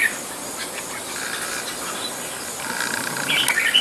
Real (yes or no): yes